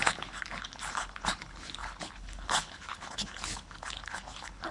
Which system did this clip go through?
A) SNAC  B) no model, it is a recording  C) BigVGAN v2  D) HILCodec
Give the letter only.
D